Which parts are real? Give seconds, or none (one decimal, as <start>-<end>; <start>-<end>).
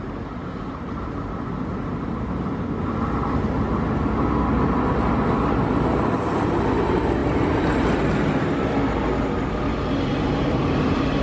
0.0-11.2